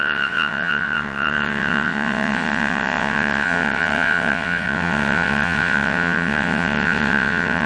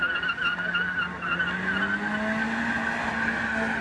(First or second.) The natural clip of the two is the second